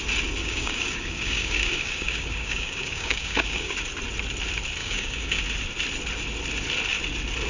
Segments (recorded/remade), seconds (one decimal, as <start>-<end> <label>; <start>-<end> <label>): 0.0-0.4 recorded; 0.4-3.8 remade; 3.8-4.8 recorded; 4.8-5.4 remade; 5.4-7.5 recorded